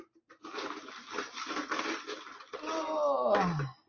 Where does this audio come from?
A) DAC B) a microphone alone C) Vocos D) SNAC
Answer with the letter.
B